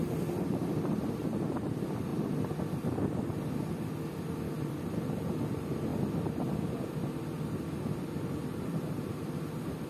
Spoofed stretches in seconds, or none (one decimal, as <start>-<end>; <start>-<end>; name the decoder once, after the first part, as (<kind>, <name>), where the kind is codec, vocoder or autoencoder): 0.6-1.2 (vocoder, BigVGAN v2)